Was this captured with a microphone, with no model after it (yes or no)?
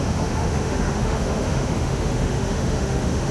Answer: no